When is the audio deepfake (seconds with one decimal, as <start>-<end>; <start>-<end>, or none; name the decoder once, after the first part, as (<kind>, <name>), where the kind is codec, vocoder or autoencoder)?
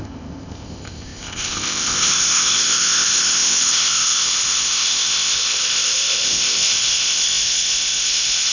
0.0-8.5 (codec, ZipCodec)